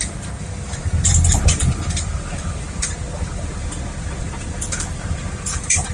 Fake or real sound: fake